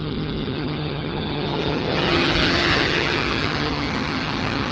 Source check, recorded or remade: remade